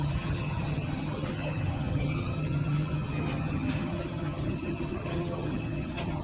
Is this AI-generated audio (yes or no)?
yes